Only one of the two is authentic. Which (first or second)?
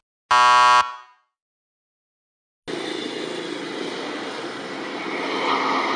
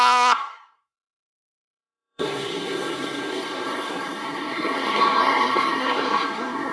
first